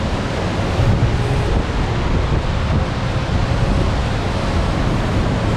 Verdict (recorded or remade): recorded